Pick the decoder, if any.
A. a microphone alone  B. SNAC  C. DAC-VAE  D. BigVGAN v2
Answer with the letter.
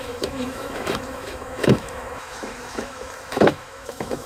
C